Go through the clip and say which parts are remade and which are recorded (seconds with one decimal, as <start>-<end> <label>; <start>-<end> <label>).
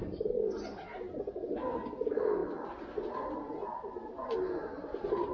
0.0-5.3 recorded